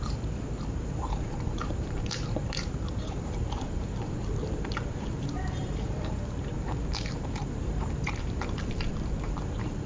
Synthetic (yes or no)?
yes